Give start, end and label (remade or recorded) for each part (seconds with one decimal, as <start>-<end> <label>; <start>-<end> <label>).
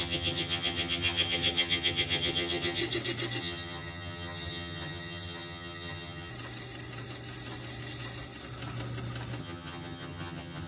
0.0-2.8 remade; 2.8-3.4 recorded; 3.4-6.3 remade; 6.3-9.4 recorded; 9.4-10.7 remade